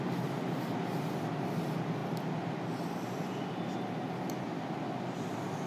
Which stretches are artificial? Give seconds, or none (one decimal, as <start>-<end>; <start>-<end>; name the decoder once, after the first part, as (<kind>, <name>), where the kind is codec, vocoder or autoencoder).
none